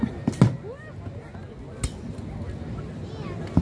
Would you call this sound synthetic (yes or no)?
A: no